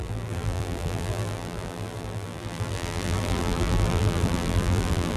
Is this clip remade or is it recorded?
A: remade